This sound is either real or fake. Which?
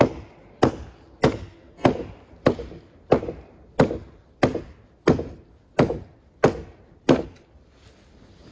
real